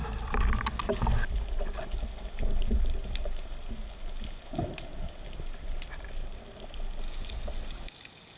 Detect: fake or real real